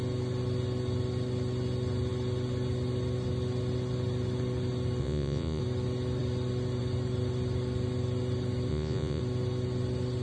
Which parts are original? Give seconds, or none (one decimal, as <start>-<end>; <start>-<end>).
0.0-5.0; 5.6-8.7; 9.2-10.2